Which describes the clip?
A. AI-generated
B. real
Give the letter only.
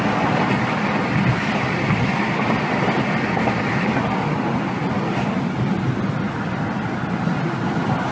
B